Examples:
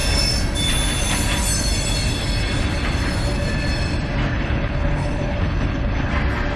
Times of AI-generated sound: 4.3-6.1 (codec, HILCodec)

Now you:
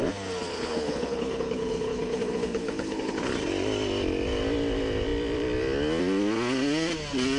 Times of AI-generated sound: 0.5-3.3 (codec, HILCodec)

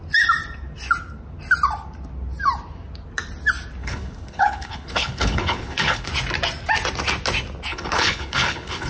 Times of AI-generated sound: 3.8-6.1 (codec, HILCodec); 7.7-8.9

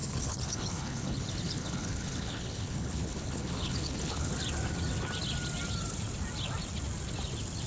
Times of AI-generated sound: 0.0-4.3 (codec, HILCodec)

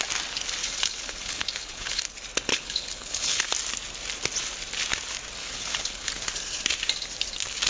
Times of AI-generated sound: 0.6-2.0 (codec, HILCodec); 2.5-3.5; 5.4-6.1

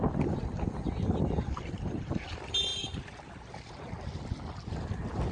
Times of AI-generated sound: none